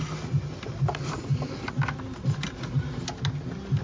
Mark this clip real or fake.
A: real